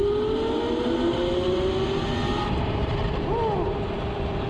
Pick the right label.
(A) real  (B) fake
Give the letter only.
A